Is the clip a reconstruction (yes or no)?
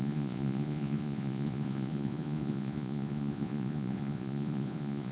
yes